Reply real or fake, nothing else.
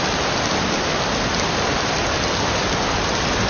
real